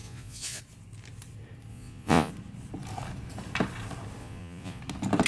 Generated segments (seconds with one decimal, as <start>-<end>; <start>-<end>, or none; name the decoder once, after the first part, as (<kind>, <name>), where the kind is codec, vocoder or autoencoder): 0.0-0.6 (vocoder, Vocos); 1.7-2.3; 4.2-4.8